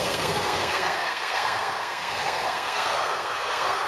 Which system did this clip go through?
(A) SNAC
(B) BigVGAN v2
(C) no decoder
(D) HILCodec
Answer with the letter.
A